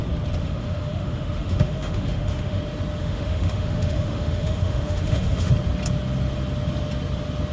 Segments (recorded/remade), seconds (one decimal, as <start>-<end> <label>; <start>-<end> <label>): 0.0-0.4 recorded; 0.4-2.6 remade; 2.6-3.0 recorded; 3.0-5.5 remade; 5.5-7.5 recorded